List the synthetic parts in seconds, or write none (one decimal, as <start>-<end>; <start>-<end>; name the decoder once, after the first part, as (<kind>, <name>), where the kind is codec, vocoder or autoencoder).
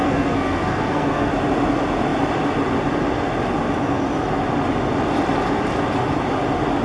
0.0-1.3 (codec, SNAC)